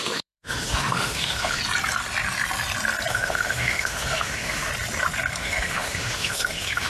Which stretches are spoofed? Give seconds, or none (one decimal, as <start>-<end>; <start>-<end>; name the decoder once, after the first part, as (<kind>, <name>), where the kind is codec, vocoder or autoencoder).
0.0-1.6 (autoencoder, DAC-VAE); 3.1-4.7; 5.4-6.9